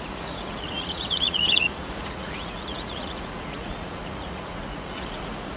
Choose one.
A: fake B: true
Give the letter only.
A